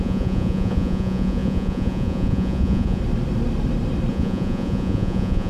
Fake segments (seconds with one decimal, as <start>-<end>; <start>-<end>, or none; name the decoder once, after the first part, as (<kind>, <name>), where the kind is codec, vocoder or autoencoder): 0.0-3.0 (vocoder, Vocos); 4.1-5.5